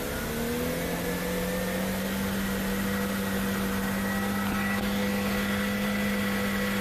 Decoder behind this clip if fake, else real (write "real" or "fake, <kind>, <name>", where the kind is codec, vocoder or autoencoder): real